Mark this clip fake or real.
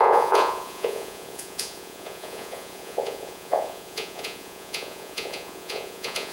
fake